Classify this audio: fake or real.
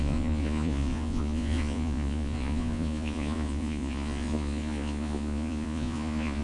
fake